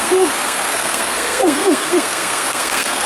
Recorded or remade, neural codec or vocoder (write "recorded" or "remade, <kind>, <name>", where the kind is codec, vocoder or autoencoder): remade, codec, SNAC